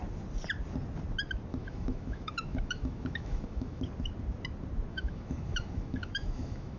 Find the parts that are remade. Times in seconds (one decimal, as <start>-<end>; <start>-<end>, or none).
1.5-3.8; 4.9-6.8